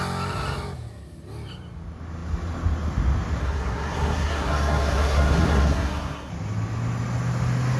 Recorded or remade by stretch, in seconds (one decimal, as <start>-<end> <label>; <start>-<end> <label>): 0.0-3.4 recorded; 3.4-6.3 remade; 6.3-7.8 recorded